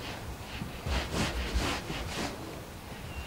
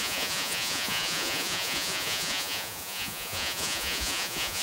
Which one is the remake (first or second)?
second